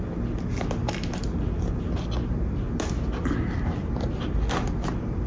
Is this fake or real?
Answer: real